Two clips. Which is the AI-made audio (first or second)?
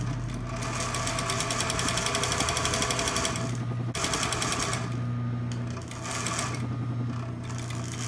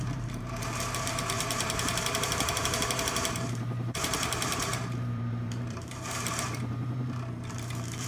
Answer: second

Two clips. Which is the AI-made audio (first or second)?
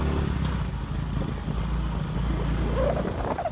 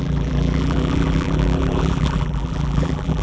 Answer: second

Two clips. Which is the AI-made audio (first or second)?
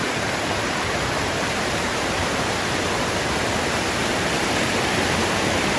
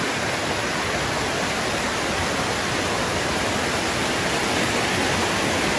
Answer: first